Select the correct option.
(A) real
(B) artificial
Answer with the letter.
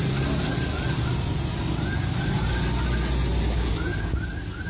A